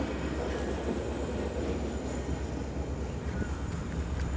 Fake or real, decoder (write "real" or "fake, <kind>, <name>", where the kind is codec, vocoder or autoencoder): real